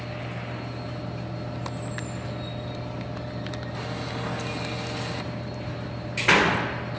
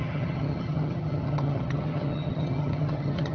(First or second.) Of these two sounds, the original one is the first